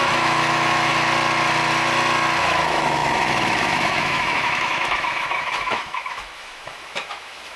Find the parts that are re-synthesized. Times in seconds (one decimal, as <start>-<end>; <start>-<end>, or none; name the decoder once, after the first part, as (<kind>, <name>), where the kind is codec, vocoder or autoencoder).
0.0-0.9 (autoencoder, DAC-VAE); 2.4-7.6